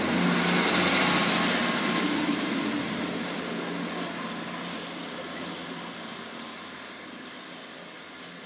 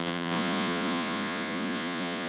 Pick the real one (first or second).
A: first